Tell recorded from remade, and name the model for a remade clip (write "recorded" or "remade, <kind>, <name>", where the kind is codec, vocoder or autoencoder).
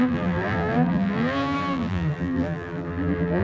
remade, vocoder, BigVGAN v2